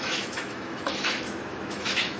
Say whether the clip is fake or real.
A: fake